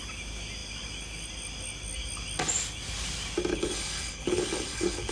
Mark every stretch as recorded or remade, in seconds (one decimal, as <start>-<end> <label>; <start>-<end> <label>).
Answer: 0.0-3.5 recorded; 3.5-5.1 remade